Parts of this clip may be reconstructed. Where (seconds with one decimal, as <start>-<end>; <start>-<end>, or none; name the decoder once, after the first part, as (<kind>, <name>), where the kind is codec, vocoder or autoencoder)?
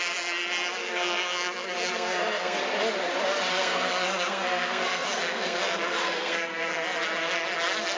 0.8-2.6 (codec, SNAC); 3.5-6.7